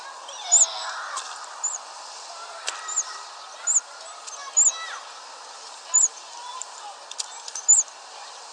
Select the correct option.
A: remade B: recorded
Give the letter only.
B